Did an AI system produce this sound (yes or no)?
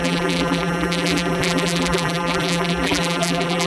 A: yes